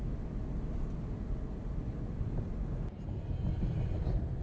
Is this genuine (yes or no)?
yes